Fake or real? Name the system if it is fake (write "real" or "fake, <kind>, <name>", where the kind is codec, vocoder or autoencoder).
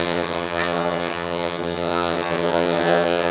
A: fake, vocoder, HiFi-GAN